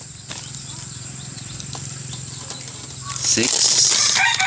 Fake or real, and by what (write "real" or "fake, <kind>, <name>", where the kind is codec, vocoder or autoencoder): fake, vocoder, BigVGAN v2